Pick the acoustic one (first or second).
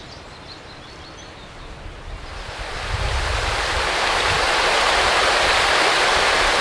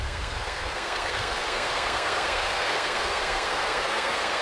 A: first